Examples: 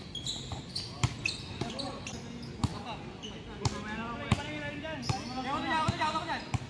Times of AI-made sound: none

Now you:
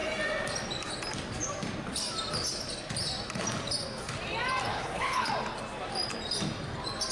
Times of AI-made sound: 4.7-5.3 (codec, HILCodec)

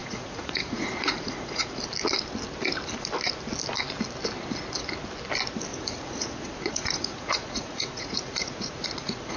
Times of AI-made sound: 0.0-1.8 (vocoder, Vocos); 5.7-9.4